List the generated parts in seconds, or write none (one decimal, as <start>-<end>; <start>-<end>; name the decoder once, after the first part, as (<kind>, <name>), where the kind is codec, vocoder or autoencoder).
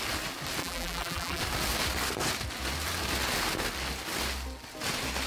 0.6-1.4 (vocoder, BigVGAN v2)